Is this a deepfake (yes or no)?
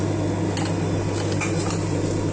no